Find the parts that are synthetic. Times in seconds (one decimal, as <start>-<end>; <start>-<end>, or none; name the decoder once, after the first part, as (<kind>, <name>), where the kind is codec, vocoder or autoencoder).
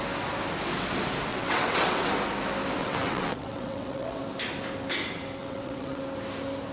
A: 1.3-2.1 (vocoder, WaveNeXt); 2.8-4.2; 5.4-6.0